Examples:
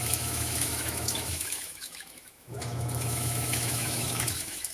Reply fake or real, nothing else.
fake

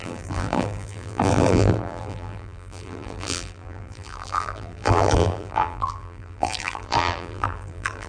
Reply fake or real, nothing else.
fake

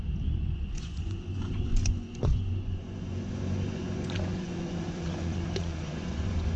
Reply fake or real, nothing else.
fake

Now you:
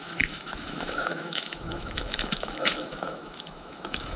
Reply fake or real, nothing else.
fake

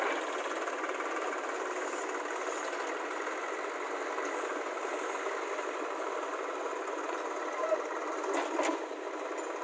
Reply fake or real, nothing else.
real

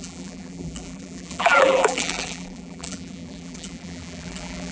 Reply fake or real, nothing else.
fake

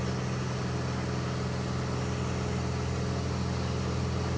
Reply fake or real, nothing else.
real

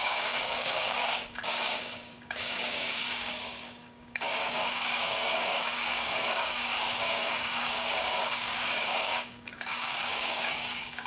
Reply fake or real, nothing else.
fake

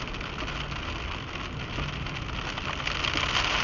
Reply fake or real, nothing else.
real